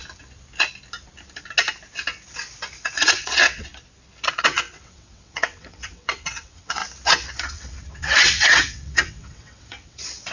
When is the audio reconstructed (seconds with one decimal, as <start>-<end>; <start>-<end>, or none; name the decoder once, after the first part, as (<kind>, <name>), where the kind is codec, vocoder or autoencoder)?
2.8-3.7 (vocoder, WaveNeXt); 4.3-6.8; 7.4-10.3